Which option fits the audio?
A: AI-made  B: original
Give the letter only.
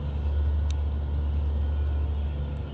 B